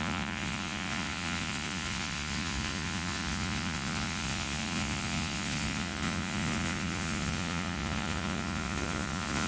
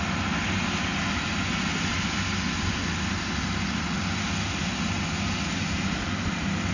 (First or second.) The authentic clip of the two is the second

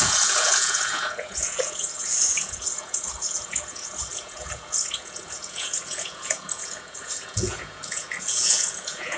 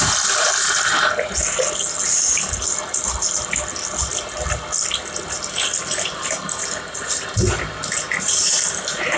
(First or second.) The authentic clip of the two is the second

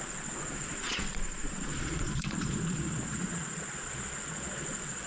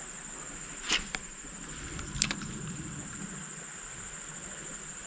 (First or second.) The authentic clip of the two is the second